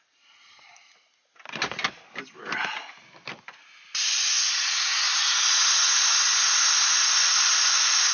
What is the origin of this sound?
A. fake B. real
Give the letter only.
B